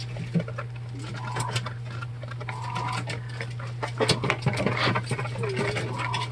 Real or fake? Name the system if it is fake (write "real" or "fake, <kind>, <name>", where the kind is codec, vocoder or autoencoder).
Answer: real